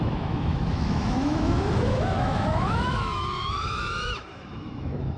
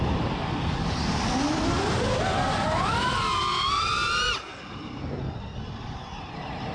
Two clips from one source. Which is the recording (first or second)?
second